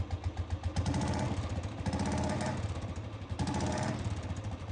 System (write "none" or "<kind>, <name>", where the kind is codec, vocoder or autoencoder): none